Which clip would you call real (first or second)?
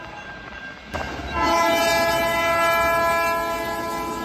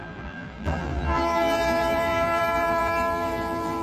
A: first